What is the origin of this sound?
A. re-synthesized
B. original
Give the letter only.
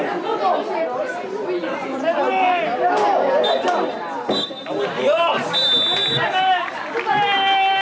B